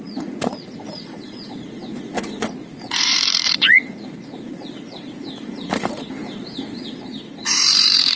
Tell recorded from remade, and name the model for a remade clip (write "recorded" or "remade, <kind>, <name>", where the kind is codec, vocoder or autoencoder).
remade, vocoder, Vocos